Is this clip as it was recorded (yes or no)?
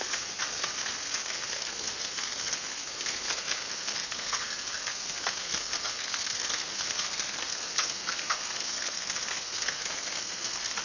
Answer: no